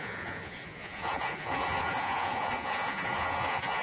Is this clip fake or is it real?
fake